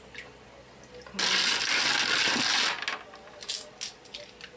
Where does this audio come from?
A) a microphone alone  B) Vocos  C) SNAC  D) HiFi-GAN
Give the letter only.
A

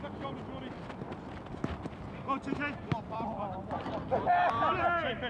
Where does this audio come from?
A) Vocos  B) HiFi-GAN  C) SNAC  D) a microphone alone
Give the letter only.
D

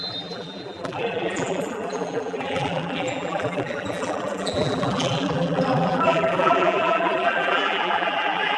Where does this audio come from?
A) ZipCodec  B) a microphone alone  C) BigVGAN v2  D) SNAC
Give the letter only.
C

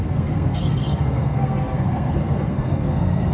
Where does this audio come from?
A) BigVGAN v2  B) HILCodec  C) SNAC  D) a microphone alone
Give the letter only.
C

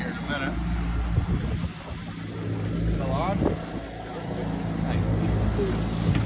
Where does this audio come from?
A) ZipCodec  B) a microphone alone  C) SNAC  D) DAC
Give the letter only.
B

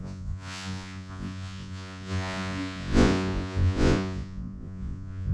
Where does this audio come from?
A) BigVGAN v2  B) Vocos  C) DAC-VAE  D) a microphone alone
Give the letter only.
B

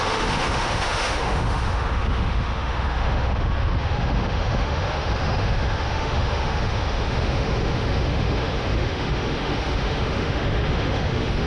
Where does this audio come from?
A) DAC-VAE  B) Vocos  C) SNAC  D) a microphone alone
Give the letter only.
A